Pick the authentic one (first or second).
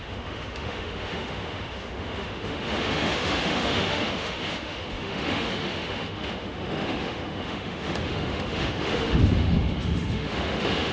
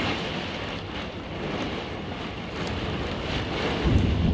second